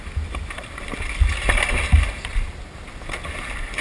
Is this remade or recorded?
recorded